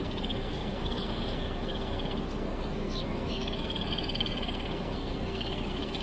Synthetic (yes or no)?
yes